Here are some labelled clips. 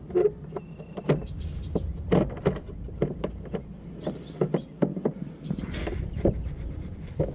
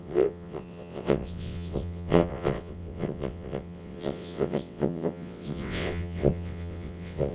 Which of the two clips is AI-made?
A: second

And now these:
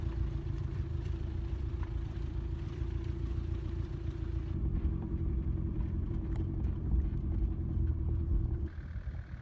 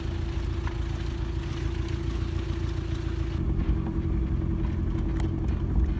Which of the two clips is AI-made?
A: first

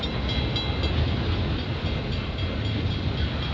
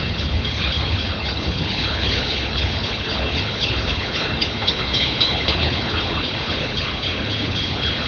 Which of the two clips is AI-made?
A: second